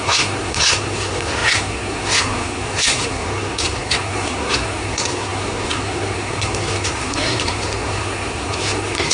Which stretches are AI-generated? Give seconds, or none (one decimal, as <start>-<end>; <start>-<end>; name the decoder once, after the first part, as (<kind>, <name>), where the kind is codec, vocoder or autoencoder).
0.0-9.1 (codec, SNAC)